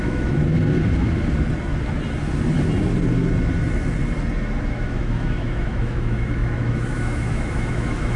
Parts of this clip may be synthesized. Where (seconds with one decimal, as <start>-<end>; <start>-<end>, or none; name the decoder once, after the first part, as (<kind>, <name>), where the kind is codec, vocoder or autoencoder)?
0.0-0.4 (autoencoder, DAC-VAE); 4.7-8.2